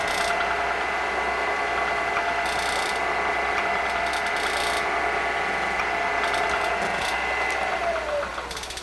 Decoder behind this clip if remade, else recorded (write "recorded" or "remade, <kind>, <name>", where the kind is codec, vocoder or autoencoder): recorded